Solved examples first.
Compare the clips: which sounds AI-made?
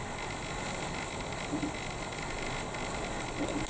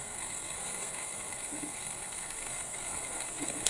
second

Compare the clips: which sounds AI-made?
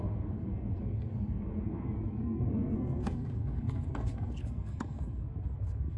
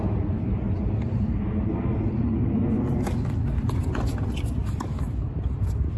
first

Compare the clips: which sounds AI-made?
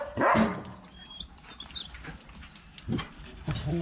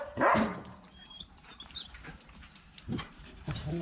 second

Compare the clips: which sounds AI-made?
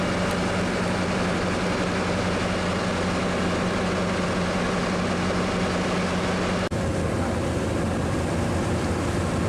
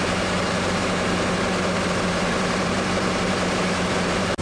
second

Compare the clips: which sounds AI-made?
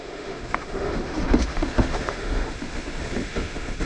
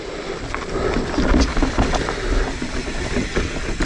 first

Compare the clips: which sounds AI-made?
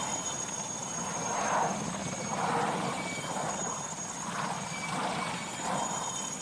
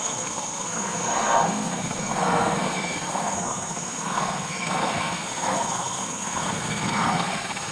second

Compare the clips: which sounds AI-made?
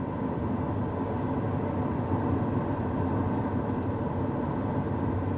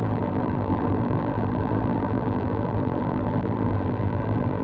second